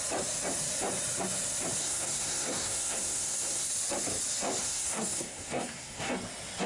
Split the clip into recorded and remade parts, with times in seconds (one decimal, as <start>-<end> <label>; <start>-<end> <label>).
0.0-1.8 recorded; 1.8-3.7 remade; 3.7-4.6 recorded; 4.6-6.1 remade; 6.1-6.7 recorded